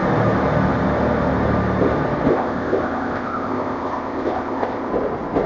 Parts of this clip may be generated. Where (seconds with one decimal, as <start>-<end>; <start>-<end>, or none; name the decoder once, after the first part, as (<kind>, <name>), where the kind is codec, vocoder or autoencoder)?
2.3-4.9 (codec, ZipCodec)